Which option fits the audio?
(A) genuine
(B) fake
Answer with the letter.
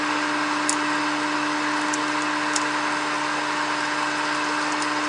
A